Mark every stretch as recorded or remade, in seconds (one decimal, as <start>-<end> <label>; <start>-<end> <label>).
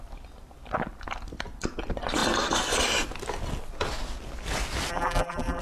0.0-4.9 recorded; 4.9-5.6 remade